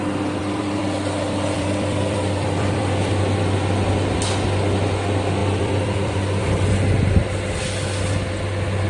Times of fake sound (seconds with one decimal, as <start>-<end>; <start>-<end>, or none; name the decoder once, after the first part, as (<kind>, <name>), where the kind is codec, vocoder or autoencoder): 0.4-3.4 (vocoder, BigVGAN v2); 5.4-7.6